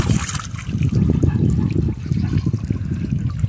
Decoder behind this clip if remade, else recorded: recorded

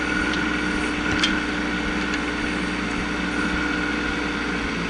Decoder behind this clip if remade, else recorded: recorded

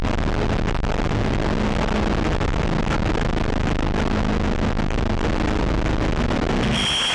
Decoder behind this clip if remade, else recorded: recorded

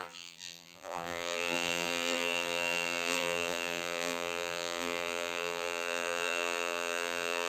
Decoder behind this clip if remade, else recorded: remade, vocoder, BigVGAN v2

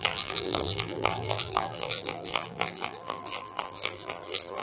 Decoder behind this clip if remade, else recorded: remade, vocoder, BigVGAN v2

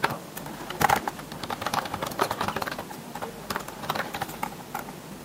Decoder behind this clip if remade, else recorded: remade, vocoder, BigVGAN v2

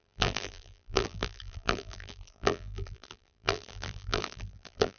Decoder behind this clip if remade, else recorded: remade, vocoder, BigVGAN v2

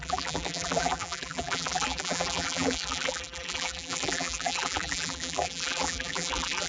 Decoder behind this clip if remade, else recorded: remade, vocoder, BigVGAN v2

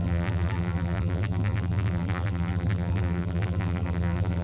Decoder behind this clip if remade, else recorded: remade, vocoder, BigVGAN v2